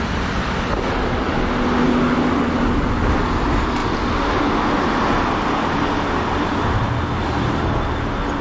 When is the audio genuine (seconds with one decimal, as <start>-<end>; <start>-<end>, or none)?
0.0-8.4